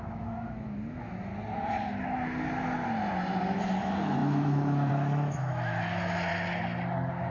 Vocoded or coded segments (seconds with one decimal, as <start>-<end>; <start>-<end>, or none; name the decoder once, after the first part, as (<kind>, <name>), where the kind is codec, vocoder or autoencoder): 0.0-1.3 (autoencoder, DAC-VAE); 3.7-6.3